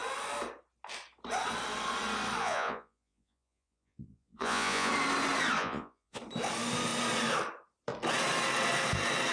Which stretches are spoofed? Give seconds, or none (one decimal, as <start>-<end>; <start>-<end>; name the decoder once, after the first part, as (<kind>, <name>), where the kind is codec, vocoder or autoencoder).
2.4-4.9 (vocoder, Vocos); 5.6-6.2